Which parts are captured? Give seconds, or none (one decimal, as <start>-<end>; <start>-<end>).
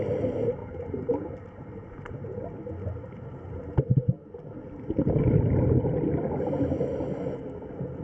0.0-0.6; 2.3-8.0